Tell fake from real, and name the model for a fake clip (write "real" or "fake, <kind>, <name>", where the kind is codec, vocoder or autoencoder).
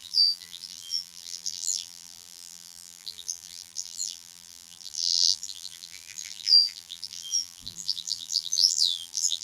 fake, vocoder, BigVGAN v2